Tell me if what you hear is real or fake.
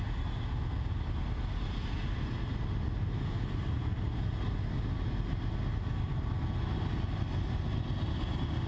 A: real